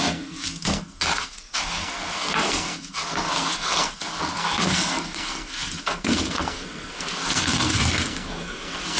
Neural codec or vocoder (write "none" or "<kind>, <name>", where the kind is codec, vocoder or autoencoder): codec, SNAC